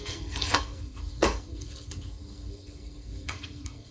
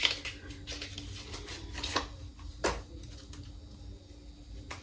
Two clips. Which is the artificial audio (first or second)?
first